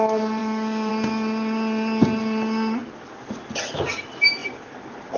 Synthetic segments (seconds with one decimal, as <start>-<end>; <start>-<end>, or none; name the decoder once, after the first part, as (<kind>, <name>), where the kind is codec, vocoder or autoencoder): 0.4-0.9 (autoencoder, DAC-VAE)

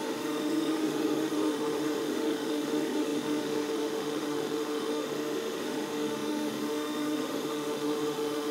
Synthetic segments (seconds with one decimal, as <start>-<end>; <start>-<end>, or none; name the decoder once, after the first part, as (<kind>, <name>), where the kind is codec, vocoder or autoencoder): 0.0-8.5 (autoencoder, DAC-VAE)